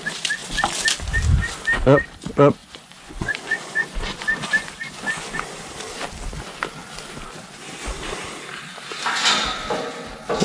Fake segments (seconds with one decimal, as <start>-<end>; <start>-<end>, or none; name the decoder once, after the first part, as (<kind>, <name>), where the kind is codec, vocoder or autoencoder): 2.6-5.7 (vocoder, Vocos)